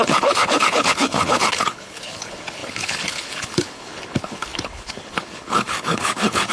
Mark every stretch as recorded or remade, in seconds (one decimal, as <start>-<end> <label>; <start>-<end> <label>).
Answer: 0.0-6.5 remade